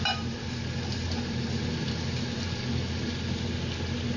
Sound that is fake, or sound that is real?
real